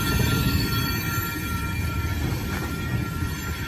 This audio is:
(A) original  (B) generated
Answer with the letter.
B